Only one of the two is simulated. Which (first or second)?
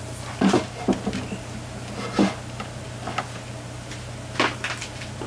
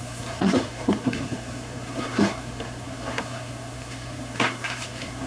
second